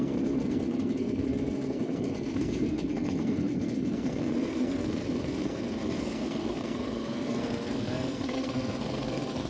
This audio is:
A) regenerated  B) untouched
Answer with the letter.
A